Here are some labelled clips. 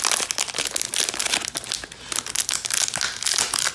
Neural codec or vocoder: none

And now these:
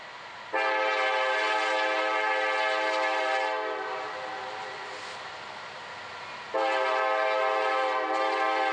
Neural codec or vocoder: none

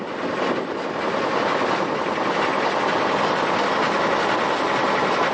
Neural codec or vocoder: none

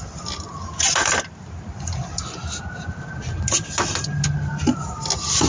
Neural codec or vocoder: none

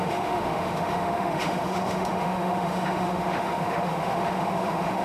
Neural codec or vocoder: autoencoder, DAC-VAE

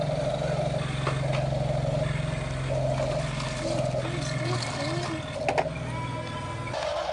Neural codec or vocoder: none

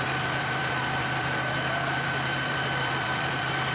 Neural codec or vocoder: vocoder, BigVGAN v2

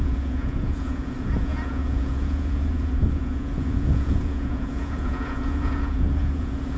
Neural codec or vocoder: vocoder, Vocos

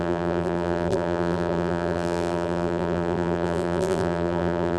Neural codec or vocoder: vocoder, BigVGAN v2